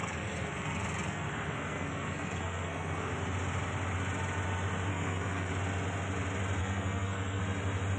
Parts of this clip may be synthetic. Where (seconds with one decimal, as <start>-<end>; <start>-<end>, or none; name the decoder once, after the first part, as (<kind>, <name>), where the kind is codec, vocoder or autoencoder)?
0.0-3.1 (codec, SNAC); 4.9-5.5; 6.6-7.4